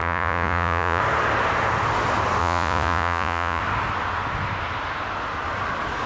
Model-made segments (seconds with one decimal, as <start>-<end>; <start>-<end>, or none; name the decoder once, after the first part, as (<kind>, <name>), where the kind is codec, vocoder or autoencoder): 0.0-1.0 (vocoder, Vocos); 2.4-3.6